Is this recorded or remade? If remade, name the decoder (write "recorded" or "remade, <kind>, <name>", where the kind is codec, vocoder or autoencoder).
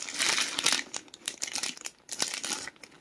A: recorded